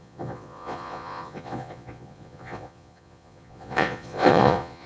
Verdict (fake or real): fake